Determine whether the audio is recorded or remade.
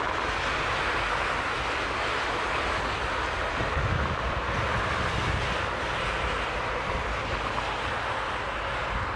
recorded